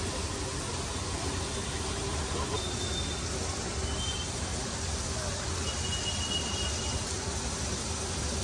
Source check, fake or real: real